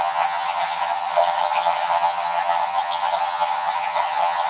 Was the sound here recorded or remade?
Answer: remade